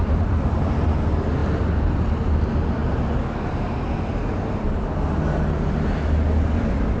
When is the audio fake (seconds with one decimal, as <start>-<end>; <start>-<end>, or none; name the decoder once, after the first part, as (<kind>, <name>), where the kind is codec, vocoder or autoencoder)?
none